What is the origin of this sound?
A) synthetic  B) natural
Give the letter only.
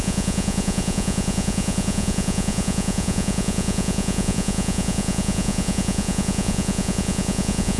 A